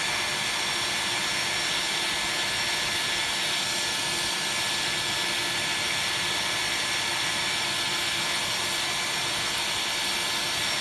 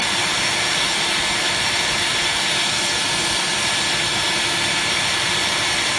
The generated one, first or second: second